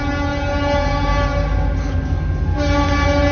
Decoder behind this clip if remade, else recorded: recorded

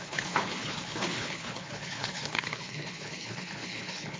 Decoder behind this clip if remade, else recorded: remade, codec, HILCodec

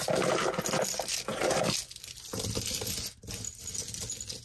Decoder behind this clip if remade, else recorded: recorded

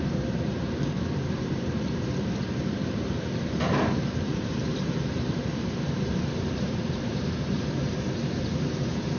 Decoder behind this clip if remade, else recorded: remade, vocoder, BigVGAN v2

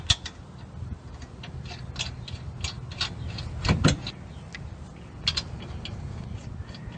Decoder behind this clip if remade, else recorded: recorded